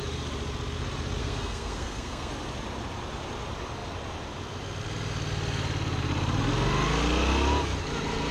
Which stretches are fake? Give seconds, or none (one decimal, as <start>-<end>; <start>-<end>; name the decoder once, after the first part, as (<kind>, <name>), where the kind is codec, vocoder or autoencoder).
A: 1.2-2.3 (codec, SNAC)